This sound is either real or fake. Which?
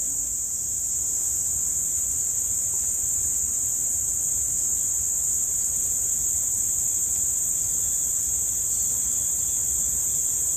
fake